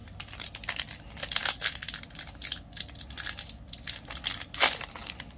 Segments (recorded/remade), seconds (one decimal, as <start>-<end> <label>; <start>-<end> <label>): 0.0-5.4 recorded